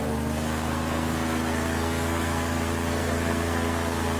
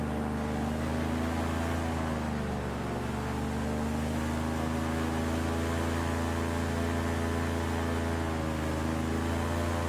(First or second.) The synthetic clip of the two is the first